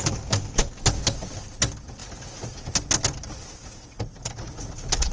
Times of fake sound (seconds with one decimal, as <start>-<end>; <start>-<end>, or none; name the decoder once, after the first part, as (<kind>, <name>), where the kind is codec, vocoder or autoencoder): 2.0-2.6 (vocoder, Vocos); 3.6-5.1